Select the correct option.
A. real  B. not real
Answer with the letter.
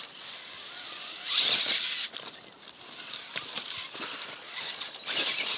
A